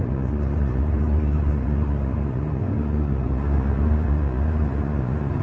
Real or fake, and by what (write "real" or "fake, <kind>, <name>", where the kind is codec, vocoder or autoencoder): fake, vocoder, Vocos